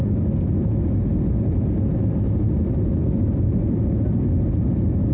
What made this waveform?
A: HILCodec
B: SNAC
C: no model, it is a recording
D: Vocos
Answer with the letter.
C